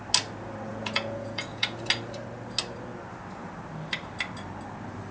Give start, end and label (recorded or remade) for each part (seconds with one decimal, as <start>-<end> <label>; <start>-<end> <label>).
0.0-0.7 recorded; 0.7-1.9 remade; 1.9-5.1 recorded